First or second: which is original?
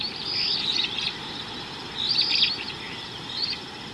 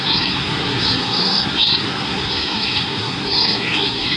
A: first